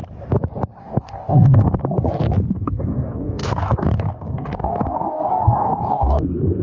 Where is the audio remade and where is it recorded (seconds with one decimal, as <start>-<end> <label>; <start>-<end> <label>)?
0.0-0.8 recorded; 0.8-1.8 remade; 1.8-2.5 recorded; 2.5-6.6 remade